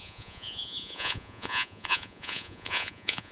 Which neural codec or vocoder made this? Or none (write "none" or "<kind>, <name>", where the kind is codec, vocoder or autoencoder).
vocoder, Vocos